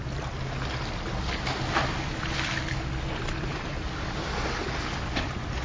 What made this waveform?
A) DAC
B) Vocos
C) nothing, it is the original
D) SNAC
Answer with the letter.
C